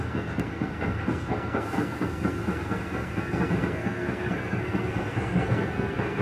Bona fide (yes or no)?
no